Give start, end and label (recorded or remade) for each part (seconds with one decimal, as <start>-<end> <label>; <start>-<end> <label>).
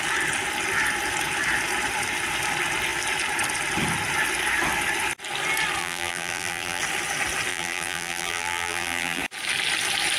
0.0-5.8 recorded; 5.8-6.8 remade; 6.8-7.5 recorded; 7.5-9.2 remade; 9.2-10.2 recorded